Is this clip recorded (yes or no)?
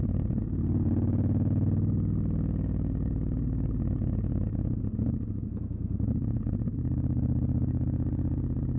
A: no